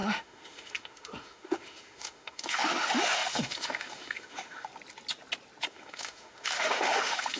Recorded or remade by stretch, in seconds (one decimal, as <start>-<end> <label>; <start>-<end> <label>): 0.0-4.7 remade; 4.7-5.7 recorded; 5.7-7.4 remade